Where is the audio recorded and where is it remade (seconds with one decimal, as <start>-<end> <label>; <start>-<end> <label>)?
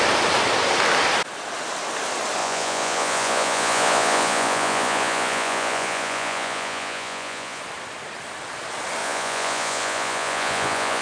0.0-2.4 recorded; 2.4-7.6 remade; 7.6-9.0 recorded; 9.0-11.0 remade